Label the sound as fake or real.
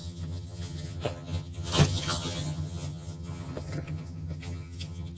fake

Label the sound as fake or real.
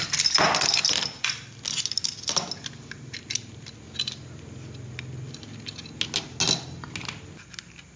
real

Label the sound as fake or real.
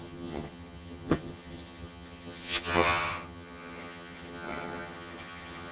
fake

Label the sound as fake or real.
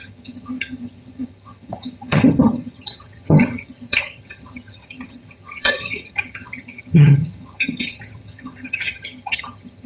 fake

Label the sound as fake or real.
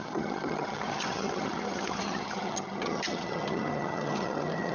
fake